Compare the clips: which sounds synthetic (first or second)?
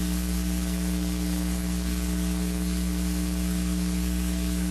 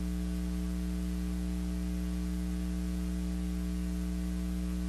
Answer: first